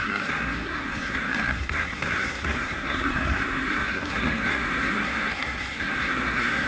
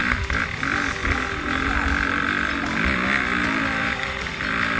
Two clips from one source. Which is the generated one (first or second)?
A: first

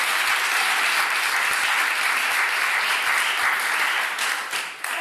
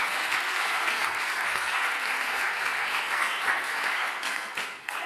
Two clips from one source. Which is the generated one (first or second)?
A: second